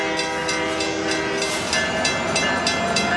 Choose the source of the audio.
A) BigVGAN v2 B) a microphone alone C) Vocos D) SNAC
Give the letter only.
B